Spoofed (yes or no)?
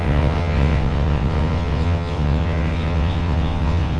yes